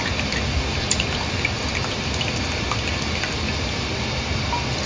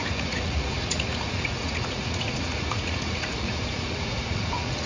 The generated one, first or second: second